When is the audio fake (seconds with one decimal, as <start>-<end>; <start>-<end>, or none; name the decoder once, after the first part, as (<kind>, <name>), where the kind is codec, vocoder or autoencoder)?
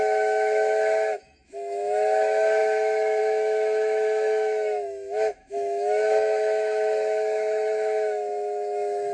0.0-9.1 (autoencoder, DAC-VAE)